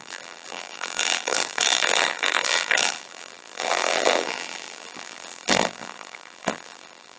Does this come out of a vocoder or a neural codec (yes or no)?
yes